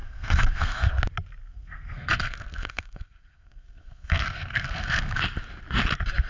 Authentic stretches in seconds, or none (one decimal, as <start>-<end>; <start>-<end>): 0.9-1.4; 5.2-6.3